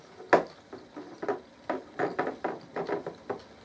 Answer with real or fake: real